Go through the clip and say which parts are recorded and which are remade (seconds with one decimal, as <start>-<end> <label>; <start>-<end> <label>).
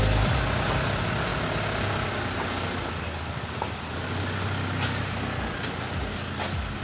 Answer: 0.0-6.8 recorded